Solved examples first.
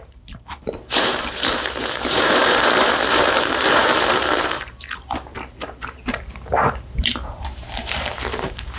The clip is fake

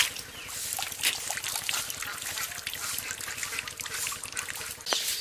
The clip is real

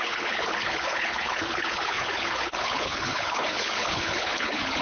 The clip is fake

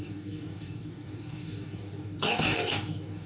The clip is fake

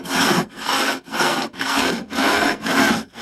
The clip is fake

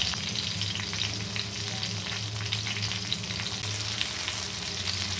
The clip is real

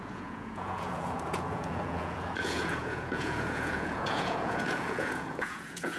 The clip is fake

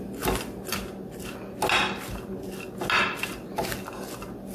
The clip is real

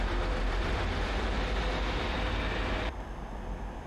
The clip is fake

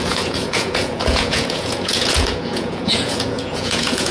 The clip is fake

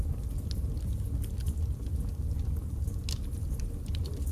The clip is real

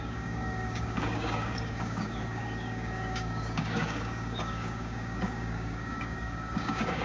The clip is fake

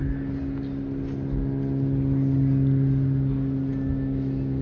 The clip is real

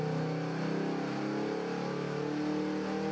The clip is real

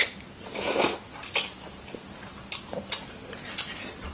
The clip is real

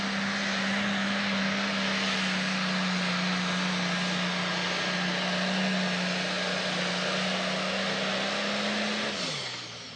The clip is real